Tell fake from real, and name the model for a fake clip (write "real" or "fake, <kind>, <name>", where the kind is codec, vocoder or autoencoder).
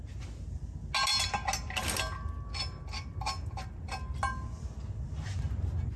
real